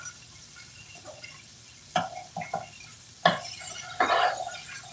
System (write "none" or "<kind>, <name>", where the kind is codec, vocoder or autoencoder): none